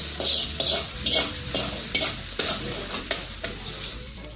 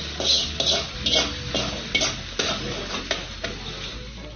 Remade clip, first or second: first